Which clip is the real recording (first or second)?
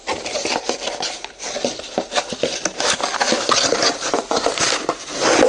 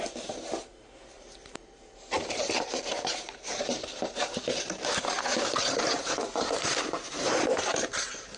first